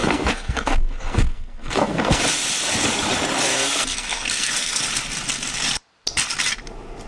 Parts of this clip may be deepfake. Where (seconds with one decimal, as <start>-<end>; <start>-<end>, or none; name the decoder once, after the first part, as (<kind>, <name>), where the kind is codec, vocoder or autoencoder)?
0.0-2.2 (codec, SNAC); 3.5-4.8